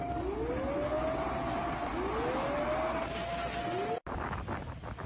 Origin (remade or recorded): recorded